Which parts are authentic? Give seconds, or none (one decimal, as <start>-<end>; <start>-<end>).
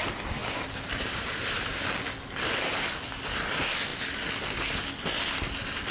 0.0-5.9